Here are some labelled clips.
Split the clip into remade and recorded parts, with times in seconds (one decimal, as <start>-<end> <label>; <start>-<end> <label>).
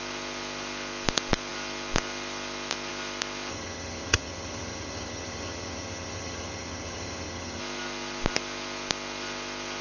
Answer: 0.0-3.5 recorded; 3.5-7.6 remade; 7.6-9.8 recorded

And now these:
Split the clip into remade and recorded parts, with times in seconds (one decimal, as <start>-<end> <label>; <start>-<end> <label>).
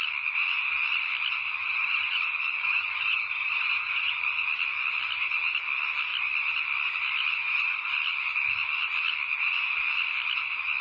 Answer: 0.0-1.6 recorded; 1.6-2.2 remade; 2.2-2.6 recorded; 2.6-4.2 remade; 4.2-7.4 recorded; 7.4-7.9 remade; 7.9-10.8 recorded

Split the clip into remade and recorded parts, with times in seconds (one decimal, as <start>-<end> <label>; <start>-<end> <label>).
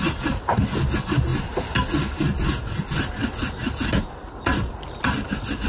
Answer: 0.0-5.7 recorded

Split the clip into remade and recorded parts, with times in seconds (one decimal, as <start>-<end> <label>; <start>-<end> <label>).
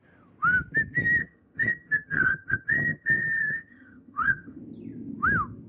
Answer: 0.0-1.2 recorded; 1.2-4.6 remade; 4.6-5.7 recorded